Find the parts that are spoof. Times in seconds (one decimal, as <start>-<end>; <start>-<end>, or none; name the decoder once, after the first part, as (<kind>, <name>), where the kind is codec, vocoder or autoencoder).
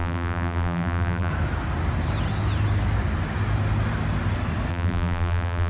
0.0-1.3 (vocoder, BigVGAN v2); 4.7-5.7